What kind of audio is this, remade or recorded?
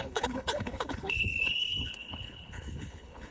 remade